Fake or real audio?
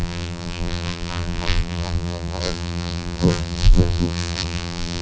fake